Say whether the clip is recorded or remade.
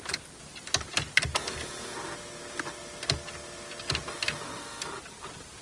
recorded